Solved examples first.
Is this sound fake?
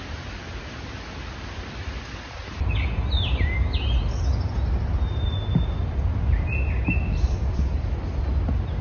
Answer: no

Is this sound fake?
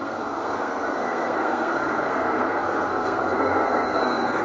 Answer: yes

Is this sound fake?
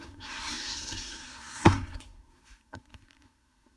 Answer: yes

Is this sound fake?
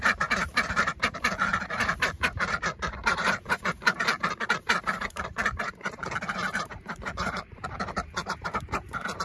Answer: yes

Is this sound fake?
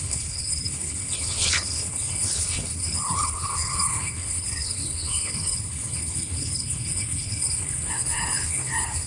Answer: yes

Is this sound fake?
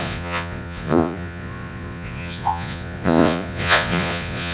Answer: yes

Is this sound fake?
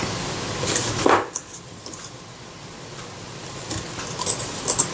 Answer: no